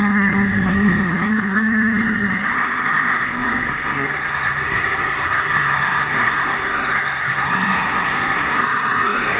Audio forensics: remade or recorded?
remade